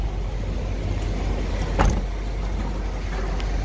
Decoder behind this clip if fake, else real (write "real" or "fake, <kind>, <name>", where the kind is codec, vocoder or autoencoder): real